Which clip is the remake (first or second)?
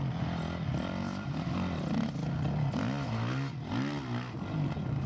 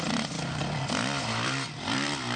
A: second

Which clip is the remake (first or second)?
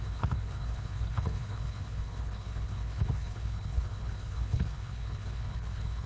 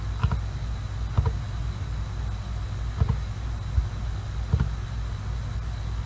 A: first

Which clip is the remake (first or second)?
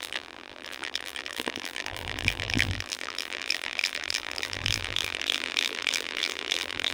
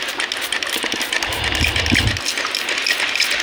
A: first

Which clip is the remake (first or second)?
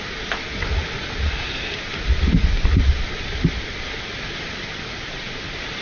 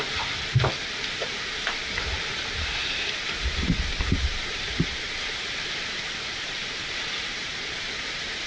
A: second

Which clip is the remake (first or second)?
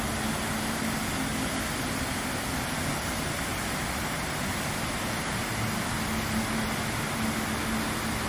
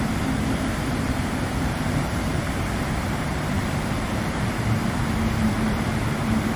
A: second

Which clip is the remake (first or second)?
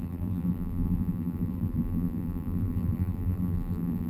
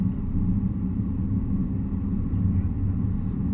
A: first